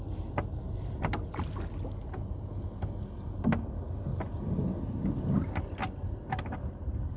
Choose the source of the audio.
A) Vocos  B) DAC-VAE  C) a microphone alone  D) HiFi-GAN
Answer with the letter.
C